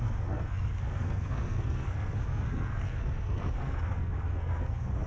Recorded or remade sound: remade